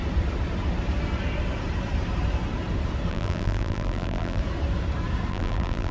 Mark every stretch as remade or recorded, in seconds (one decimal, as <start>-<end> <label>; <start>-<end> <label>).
0.0-3.1 recorded; 3.1-4.4 remade; 4.4-5.3 recorded; 5.3-5.9 remade